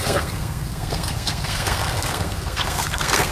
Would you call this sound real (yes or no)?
no